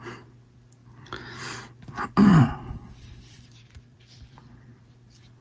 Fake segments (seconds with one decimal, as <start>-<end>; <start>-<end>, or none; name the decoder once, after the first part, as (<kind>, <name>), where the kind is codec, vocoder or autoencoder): 0.8-1.6 (vocoder, BigVGAN v2); 2.3-4.9